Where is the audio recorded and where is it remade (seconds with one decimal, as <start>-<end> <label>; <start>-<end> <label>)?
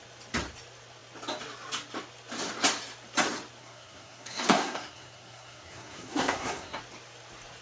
0.0-3.6 recorded; 3.6-6.8 remade; 6.8-7.6 recorded